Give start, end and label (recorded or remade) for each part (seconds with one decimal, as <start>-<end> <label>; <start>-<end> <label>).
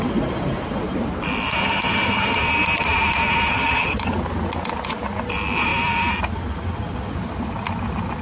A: 0.0-1.6 recorded; 1.6-2.4 remade; 2.4-3.5 recorded; 3.5-4.1 remade; 4.1-8.2 recorded